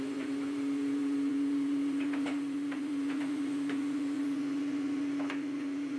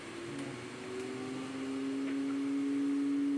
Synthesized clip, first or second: first